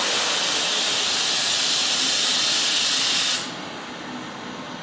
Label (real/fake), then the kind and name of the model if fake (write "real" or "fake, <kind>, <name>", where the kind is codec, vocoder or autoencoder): real